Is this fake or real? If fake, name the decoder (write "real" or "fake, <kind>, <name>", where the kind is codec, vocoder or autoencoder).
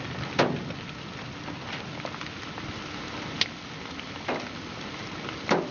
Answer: real